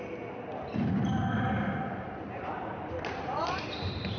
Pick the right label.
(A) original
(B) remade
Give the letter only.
A